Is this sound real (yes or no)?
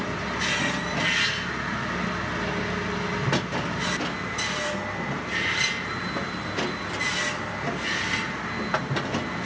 yes